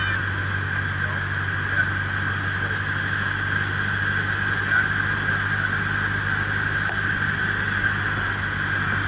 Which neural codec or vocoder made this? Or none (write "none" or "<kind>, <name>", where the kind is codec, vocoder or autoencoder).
none